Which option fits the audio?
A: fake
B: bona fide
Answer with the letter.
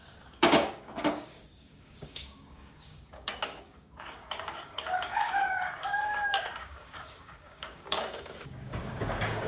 A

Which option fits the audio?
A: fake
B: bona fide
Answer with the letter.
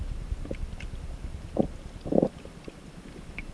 B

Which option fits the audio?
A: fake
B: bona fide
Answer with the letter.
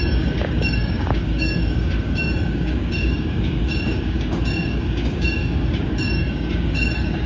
A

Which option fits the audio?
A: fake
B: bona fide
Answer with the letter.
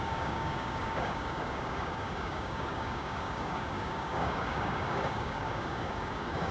A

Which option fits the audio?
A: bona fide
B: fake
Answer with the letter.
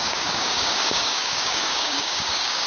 B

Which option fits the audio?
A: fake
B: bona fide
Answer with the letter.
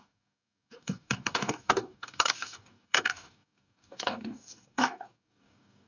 A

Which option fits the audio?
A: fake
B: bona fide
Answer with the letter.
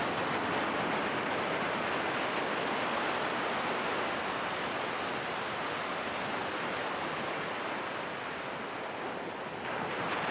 B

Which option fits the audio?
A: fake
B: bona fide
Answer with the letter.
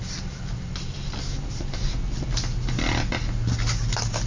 B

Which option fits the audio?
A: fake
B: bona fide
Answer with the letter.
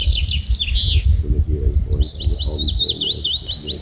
B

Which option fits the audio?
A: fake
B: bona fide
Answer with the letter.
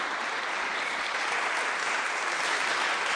B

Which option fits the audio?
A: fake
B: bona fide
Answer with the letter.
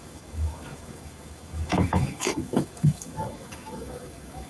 A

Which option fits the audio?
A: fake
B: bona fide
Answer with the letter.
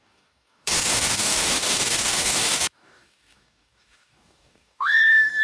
A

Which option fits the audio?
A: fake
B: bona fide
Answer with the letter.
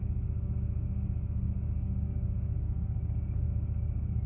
A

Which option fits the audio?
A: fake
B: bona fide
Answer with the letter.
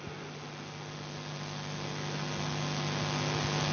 B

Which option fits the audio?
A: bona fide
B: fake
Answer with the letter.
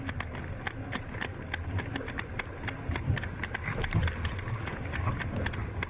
A